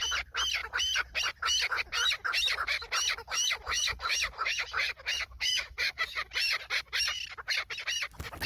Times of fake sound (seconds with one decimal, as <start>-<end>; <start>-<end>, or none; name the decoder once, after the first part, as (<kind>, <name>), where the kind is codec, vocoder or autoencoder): 3.2-6.3 (autoencoder, DAC-VAE)